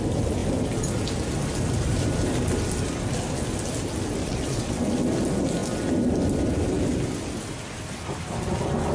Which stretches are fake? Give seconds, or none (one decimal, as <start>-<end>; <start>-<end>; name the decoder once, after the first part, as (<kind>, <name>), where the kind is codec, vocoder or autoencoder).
4.2-4.8 (vocoder, WaveNeXt)